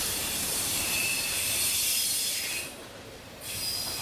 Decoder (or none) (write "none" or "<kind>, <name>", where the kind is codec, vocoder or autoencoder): vocoder, BigVGAN v2